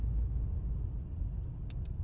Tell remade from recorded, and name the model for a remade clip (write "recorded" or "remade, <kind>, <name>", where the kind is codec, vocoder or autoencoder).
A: recorded